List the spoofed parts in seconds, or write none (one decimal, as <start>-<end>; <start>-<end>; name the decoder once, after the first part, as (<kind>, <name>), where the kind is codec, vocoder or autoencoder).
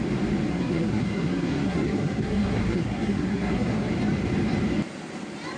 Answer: 0.5-3.9 (codec, SNAC)